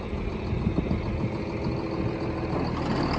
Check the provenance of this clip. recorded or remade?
recorded